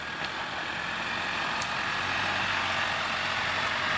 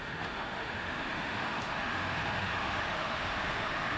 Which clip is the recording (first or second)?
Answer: first